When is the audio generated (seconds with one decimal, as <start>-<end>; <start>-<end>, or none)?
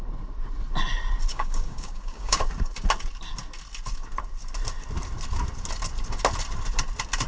1.3-2.4